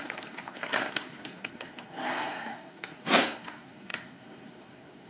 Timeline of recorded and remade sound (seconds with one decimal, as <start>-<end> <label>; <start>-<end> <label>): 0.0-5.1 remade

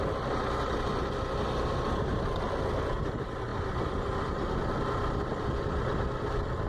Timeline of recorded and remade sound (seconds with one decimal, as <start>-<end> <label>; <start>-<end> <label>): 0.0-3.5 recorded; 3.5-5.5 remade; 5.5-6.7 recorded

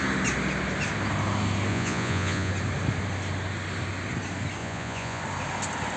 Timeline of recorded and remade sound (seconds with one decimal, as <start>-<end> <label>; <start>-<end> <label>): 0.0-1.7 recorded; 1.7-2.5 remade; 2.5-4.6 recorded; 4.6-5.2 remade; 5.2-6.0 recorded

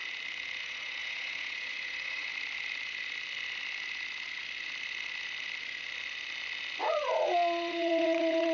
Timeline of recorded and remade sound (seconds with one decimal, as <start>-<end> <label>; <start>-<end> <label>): 0.0-0.6 recorded; 0.6-2.3 remade; 2.3-6.8 recorded; 6.8-8.5 remade

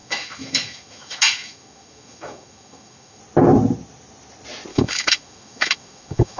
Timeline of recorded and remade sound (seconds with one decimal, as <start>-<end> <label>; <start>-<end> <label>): 0.0-3.2 remade; 3.2-4.7 recorded; 4.7-6.4 remade

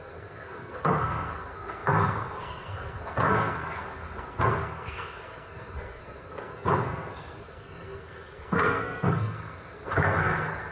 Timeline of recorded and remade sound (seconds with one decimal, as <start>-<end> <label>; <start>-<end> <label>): 0.0-10.7 remade